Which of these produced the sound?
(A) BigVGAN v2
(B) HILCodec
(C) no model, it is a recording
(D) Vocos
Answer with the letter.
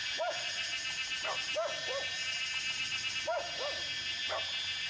C